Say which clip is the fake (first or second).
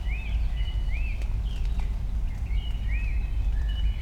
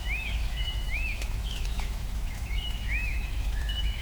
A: second